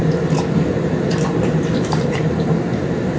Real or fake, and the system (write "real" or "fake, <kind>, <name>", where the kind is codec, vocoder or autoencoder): fake, vocoder, BigVGAN v2